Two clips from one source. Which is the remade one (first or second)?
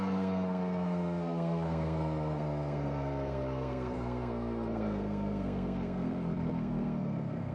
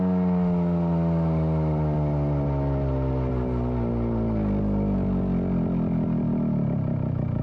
first